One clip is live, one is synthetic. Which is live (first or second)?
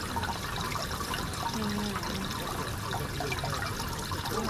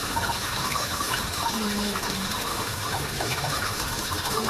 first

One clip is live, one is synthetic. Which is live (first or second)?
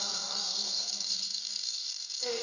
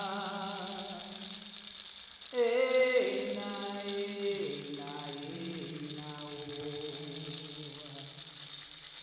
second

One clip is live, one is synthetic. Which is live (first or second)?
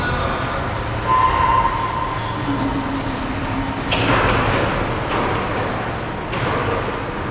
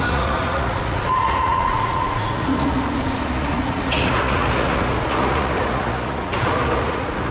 first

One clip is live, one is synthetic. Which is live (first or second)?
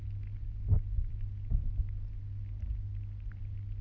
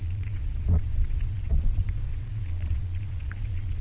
first